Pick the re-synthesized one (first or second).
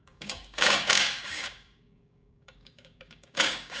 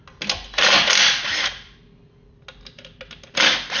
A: first